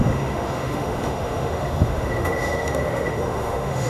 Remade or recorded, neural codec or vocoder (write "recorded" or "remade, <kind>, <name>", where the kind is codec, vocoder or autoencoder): remade, autoencoder, DAC-VAE